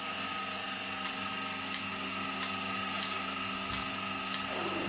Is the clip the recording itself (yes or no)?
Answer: yes